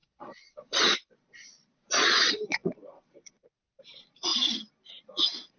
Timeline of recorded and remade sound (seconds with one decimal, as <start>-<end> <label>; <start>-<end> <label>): 0.0-4.3 remade; 4.3-4.9 recorded; 4.9-5.6 remade